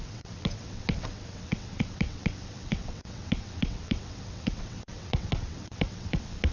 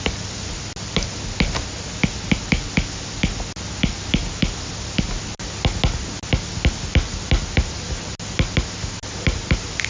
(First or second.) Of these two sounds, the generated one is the first